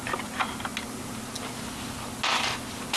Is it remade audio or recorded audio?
recorded